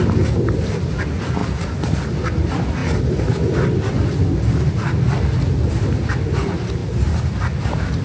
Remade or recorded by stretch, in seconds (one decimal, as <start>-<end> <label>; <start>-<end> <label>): 0.0-8.0 recorded

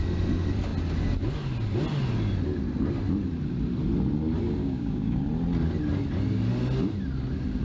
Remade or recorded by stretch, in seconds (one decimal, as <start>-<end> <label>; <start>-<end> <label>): 0.0-4.6 recorded; 4.6-5.2 remade; 5.2-7.6 recorded

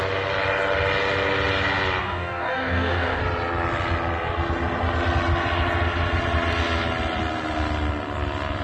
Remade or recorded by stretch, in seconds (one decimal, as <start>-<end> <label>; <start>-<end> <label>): 0.0-2.0 recorded; 2.0-3.2 remade; 3.2-8.6 recorded

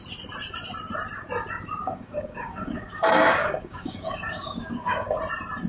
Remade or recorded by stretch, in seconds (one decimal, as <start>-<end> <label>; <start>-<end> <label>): 0.0-1.8 recorded; 1.8-5.2 remade; 5.2-5.7 recorded

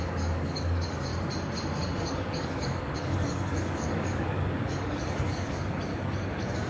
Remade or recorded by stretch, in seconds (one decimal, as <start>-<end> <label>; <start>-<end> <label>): 0.0-1.1 remade; 1.1-2.0 recorded; 2.0-6.7 remade

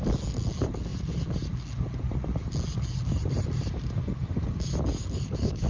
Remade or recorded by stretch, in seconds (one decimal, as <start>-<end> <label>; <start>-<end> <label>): 0.0-5.0 recorded; 5.0-5.7 remade

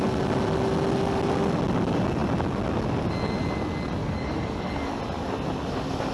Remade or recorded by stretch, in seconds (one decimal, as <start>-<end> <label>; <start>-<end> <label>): 0.0-4.0 recorded; 4.0-5.0 remade; 5.0-6.1 recorded

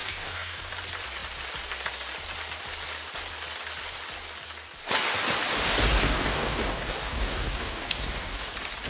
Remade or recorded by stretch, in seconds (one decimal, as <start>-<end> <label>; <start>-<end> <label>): 0.0-0.7 remade; 0.7-6.0 recorded; 6.0-8.5 remade; 8.5-8.9 recorded